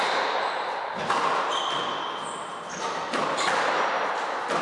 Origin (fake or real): real